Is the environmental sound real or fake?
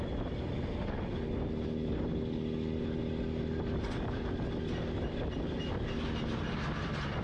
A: real